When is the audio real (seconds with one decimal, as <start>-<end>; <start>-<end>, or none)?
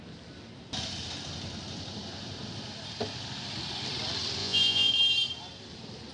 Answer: 0.0-4.4; 4.9-6.1